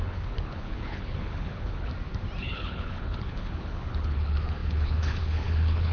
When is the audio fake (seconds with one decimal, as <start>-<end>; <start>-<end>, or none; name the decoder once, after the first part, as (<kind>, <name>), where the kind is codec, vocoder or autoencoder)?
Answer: 0.0-1.9 (codec, HILCodec); 2.4-5.9